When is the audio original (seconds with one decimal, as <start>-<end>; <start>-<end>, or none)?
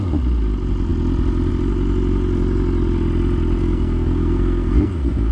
0.0-3.6